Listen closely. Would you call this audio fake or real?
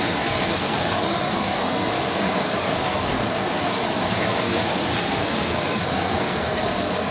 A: fake